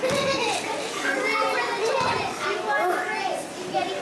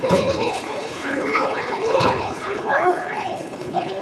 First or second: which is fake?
second